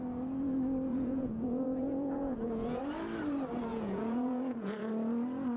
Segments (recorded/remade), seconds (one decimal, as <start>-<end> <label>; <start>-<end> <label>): 0.0-0.9 recorded; 0.9-2.8 remade; 2.8-3.7 recorded; 3.7-4.9 remade; 4.9-5.6 recorded